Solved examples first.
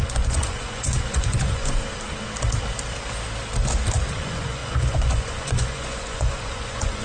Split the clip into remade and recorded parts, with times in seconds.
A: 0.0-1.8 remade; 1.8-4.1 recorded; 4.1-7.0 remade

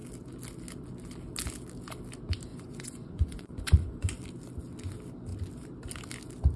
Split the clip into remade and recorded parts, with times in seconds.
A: 0.0-2.5 recorded; 2.5-4.1 remade; 4.1-6.6 recorded

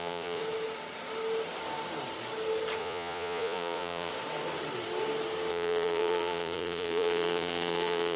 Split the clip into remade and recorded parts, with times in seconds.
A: 0.0-0.4 remade; 0.4-2.8 recorded; 2.8-4.1 remade; 4.1-5.5 recorded; 5.5-8.2 remade

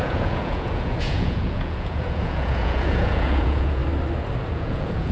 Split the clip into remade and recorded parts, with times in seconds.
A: 0.0-3.8 remade; 3.8-4.5 recorded; 4.5-5.1 remade

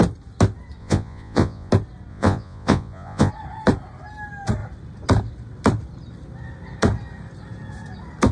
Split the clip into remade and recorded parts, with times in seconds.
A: 0.0-0.8 recorded; 0.8-1.7 remade; 1.7-2.1 recorded; 2.1-3.3 remade; 3.3-8.3 recorded

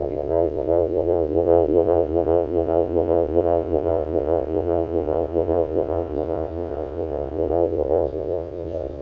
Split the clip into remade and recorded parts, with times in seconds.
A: 0.0-9.0 remade

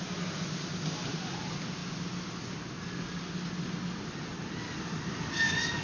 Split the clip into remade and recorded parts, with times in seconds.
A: 0.0-5.8 recorded

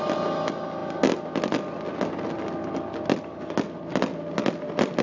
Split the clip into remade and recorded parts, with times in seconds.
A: 0.0-5.0 recorded